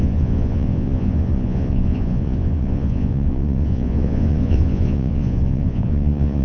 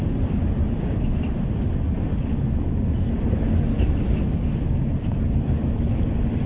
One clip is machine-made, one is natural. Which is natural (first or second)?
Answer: second